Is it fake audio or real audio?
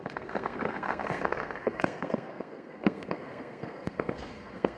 fake